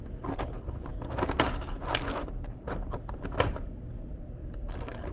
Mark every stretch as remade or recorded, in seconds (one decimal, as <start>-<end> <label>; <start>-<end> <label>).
0.0-5.1 recorded